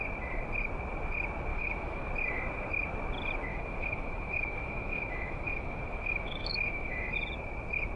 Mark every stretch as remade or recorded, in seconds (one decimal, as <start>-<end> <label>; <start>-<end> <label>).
0.0-1.5 recorded; 1.5-2.1 remade; 2.1-3.5 recorded; 3.5-7.1 remade; 7.1-8.0 recorded